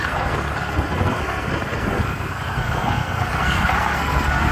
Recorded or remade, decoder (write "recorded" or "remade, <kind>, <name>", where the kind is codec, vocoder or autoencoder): remade, codec, SNAC